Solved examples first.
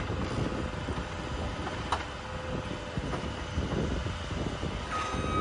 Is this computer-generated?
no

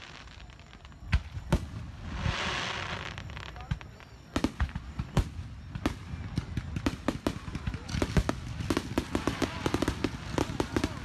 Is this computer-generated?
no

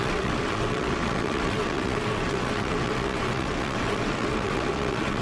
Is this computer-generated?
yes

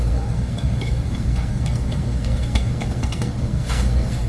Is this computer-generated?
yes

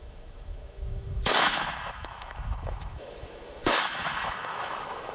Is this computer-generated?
yes